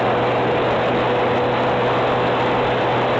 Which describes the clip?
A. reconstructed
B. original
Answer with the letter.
B